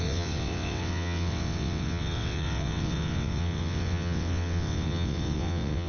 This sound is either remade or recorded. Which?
remade